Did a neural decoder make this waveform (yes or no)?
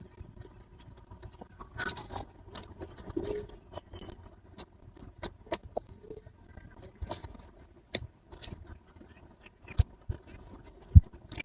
no